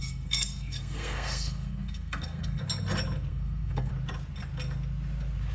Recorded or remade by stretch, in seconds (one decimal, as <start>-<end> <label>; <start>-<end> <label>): 0.0-2.6 remade; 2.6-3.3 recorded; 3.3-3.9 remade; 3.9-5.5 recorded